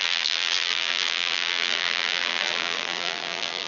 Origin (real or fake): fake